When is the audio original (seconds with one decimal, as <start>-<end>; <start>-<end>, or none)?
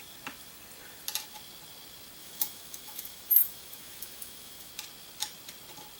0.0-2.2; 4.7-6.0